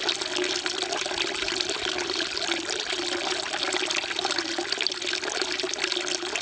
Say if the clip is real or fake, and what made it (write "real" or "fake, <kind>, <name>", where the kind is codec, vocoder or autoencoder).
real